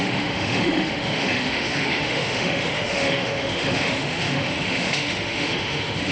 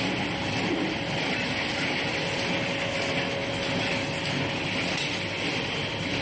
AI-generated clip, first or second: first